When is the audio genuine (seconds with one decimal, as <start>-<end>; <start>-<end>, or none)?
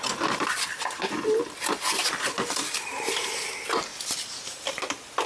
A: 0.0-5.3